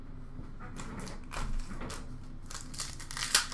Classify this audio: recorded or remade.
recorded